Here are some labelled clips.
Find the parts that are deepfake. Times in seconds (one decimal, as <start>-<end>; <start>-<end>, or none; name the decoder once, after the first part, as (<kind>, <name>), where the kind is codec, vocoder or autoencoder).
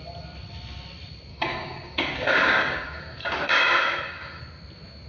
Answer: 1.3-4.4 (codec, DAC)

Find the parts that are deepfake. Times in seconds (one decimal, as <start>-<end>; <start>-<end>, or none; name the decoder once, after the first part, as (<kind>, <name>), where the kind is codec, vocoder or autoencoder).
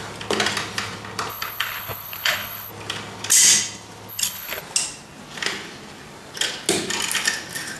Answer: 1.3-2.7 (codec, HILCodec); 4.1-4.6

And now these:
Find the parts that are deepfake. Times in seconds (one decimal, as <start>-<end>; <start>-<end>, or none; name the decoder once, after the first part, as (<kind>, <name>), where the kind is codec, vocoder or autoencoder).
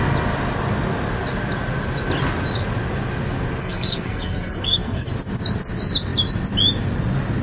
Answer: 3.6-5.1 (codec, SNAC)